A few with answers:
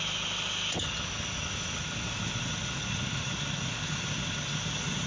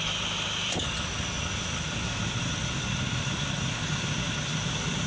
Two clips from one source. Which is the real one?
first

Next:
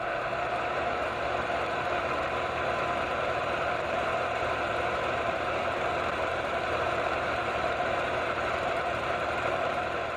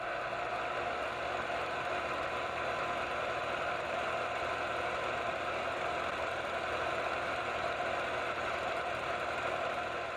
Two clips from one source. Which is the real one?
second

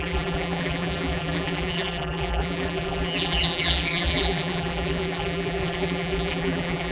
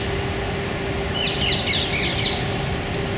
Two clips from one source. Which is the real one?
second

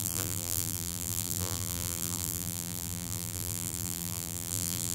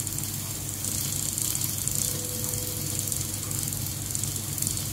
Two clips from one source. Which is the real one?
second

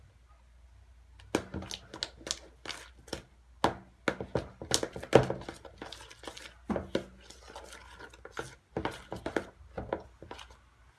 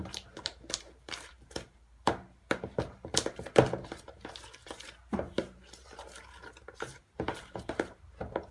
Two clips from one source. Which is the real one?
first